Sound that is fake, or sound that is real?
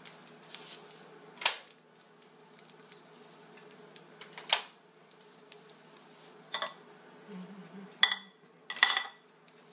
real